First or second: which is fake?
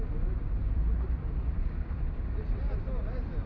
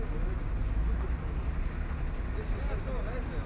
first